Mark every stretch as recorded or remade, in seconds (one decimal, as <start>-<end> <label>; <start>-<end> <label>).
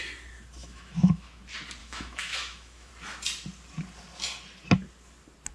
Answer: 0.0-0.6 recorded; 0.6-1.4 remade; 1.4-1.8 recorded; 1.8-2.9 remade; 2.9-5.5 recorded